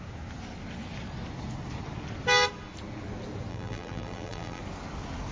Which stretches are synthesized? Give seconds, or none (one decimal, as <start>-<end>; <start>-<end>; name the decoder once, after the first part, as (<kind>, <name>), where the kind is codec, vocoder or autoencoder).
3.5-4.6 (vocoder, BigVGAN v2)